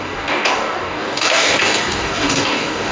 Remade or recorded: remade